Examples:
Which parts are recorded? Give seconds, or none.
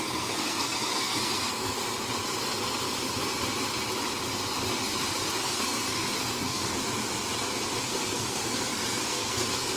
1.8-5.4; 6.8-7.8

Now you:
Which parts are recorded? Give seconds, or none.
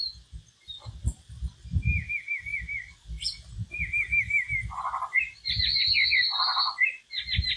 0.0-7.6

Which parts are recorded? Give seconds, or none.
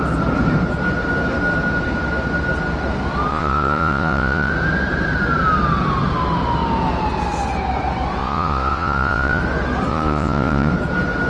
0.0-3.3; 4.5-8.2; 9.4-9.9; 10.7-11.3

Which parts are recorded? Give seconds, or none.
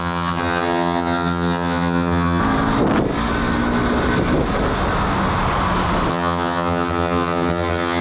2.4-6.1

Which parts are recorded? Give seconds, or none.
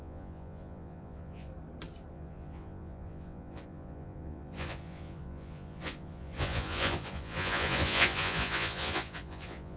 1.5-2.1